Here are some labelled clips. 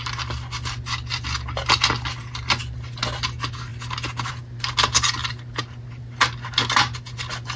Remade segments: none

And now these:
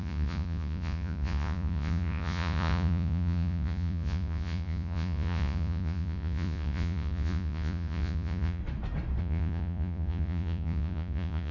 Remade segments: 0.0-8.6 (vocoder, Vocos); 9.2-11.5

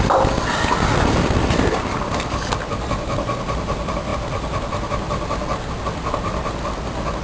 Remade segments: none

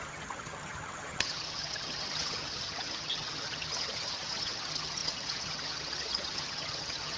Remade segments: 0.0-7.2 (vocoder, HiFi-GAN)

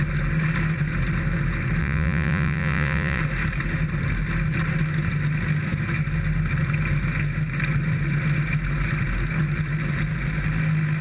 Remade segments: 1.8-3.2 (vocoder, Vocos)

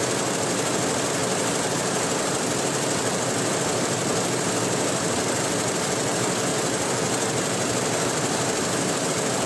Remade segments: none